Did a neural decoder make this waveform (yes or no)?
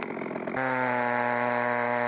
no